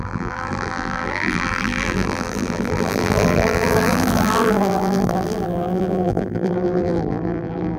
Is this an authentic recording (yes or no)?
no